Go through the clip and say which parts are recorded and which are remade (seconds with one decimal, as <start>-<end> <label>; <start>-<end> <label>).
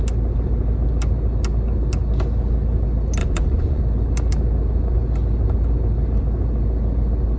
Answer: 0.0-3.2 recorded; 3.2-3.8 remade; 3.8-7.4 recorded